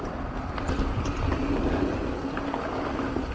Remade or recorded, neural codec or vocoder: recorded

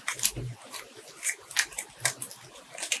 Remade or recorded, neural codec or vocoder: recorded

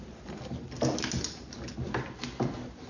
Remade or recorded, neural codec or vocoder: recorded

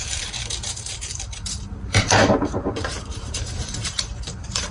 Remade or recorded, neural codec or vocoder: remade, vocoder, BigVGAN v2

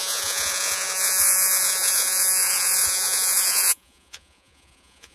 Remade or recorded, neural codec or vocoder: remade, vocoder, Vocos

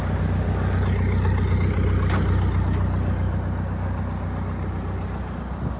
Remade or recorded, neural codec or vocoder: recorded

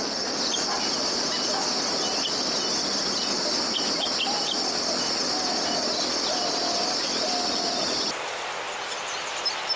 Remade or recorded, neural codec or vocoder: recorded